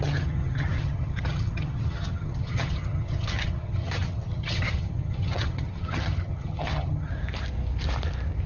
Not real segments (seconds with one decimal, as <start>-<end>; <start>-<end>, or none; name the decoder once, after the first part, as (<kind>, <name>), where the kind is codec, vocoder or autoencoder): 0.0-7.1 (vocoder, HiFi-GAN)